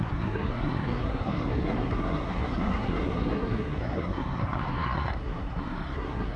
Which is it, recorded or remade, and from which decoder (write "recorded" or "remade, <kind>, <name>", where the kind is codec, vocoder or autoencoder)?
remade, codec, SNAC